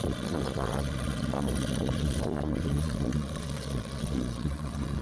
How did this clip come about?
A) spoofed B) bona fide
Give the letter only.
A